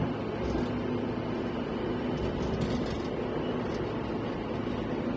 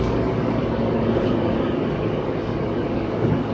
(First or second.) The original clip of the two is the first